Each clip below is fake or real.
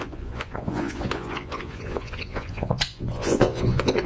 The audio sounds fake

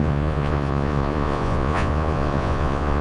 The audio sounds fake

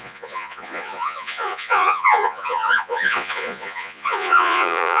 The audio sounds fake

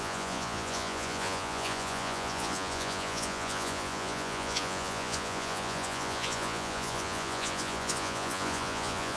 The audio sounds fake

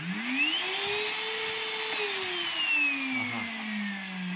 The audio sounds real